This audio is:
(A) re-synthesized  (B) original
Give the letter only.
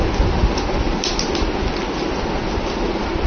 B